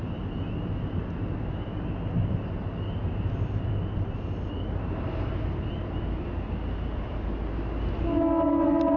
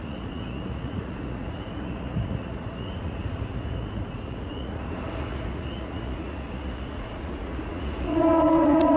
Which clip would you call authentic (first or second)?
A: first